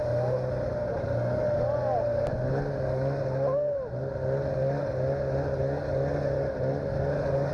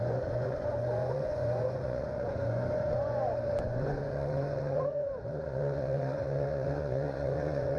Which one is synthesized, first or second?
second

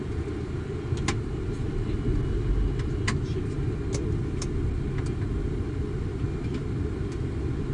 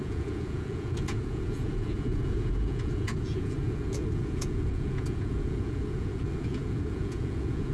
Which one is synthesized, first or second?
second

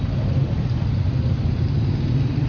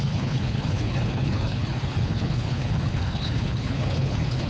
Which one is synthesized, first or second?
second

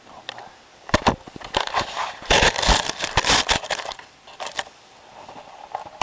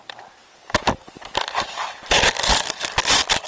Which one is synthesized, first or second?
first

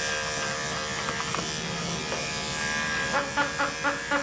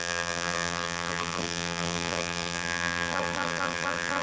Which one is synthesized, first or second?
second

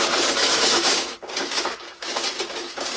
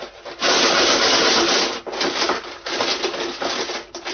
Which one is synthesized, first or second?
first